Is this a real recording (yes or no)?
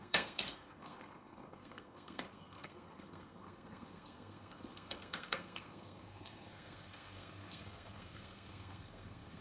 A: no